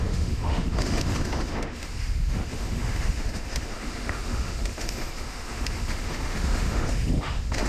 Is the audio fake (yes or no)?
yes